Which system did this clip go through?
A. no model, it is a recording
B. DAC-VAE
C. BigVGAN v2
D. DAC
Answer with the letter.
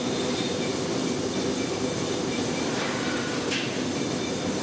A